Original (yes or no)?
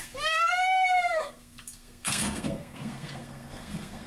no